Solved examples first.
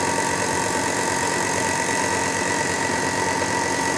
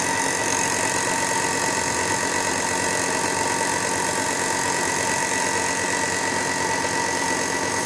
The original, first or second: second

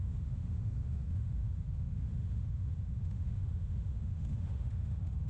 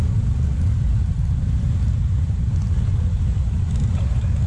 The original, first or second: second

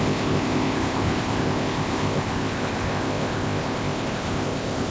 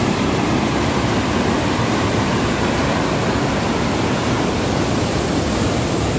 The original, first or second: second